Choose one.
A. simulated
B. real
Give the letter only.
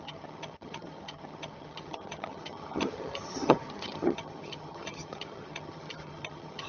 A